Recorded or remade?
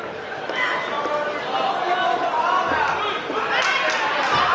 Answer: recorded